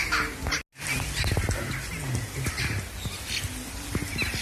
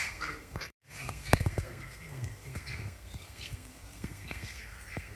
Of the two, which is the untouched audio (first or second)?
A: first